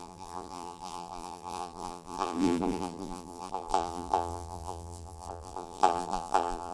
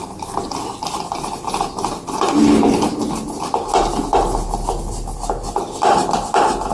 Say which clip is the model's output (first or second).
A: first